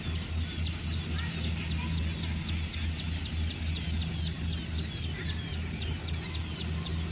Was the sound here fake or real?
real